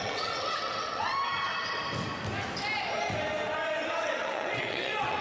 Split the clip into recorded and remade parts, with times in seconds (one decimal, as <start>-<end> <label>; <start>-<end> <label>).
0.0-1.1 remade; 1.1-4.0 recorded; 4.0-5.2 remade